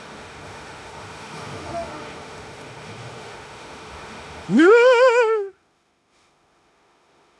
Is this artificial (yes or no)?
yes